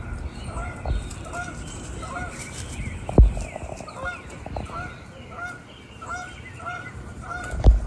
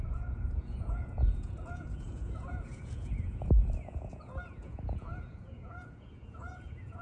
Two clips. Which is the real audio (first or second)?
first